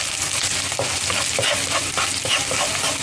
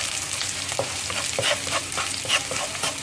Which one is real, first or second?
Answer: first